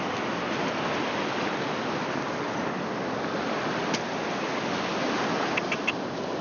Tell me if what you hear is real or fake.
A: real